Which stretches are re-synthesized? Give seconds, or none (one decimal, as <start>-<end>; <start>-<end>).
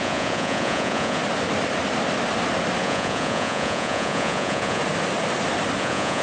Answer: 0.0-1.2; 2.8-4.8; 5.8-6.2